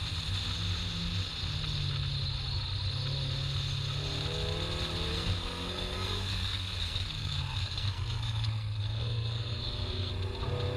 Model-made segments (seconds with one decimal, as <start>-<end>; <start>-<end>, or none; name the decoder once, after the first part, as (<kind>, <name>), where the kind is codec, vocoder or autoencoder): 5.1-10.1 (codec, SNAC)